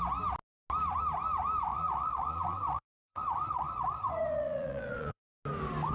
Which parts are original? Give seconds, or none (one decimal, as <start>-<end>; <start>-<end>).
0.0-1.7; 5.2-5.9